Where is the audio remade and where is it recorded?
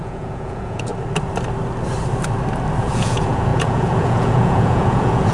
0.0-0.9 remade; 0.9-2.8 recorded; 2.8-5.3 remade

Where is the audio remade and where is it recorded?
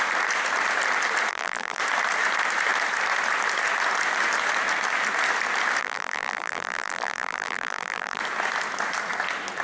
0.0-1.3 recorded; 1.3-1.8 remade; 1.8-5.8 recorded; 5.8-8.2 remade; 8.2-9.6 recorded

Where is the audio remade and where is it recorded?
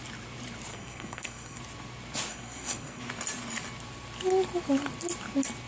0.0-0.7 recorded; 0.7-1.6 remade; 1.6-2.3 recorded; 2.3-3.0 remade; 3.0-5.7 recorded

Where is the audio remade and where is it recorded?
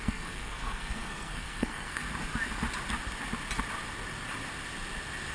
0.0-2.0 remade; 2.0-5.3 recorded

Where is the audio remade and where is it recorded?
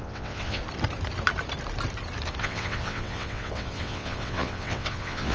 0.0-0.6 remade; 0.6-2.4 recorded; 2.4-5.3 remade